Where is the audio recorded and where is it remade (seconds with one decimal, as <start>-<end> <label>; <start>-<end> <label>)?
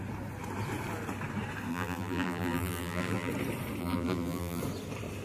0.0-1.7 recorded; 1.7-3.3 remade; 3.3-3.8 recorded; 3.8-4.6 remade; 4.6-5.2 recorded